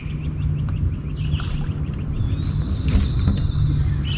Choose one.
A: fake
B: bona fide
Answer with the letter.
B